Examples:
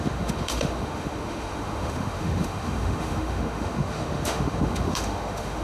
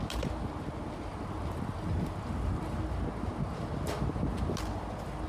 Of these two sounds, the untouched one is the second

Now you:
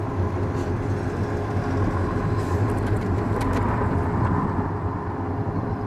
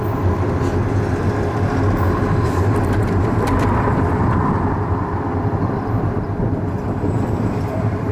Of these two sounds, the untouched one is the first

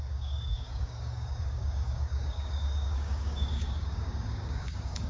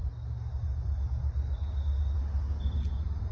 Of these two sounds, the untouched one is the second